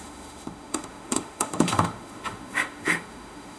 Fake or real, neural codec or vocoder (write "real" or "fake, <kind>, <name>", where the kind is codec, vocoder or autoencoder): fake, autoencoder, DAC-VAE